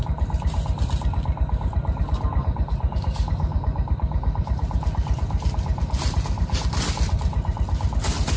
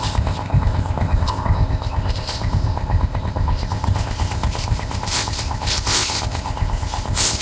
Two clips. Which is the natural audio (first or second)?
first